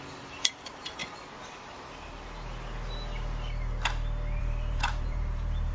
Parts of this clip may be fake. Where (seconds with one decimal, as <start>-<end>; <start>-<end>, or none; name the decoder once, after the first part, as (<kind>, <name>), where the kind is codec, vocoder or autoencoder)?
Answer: 0.0-1.0 (vocoder, BigVGAN v2); 4.4-5.7